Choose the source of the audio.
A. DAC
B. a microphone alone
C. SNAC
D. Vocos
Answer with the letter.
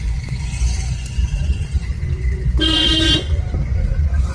D